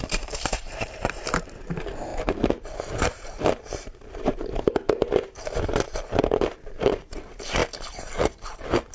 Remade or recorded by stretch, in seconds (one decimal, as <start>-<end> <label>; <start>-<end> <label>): 0.0-8.9 remade